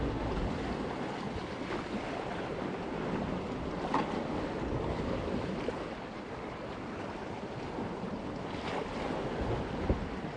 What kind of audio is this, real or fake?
real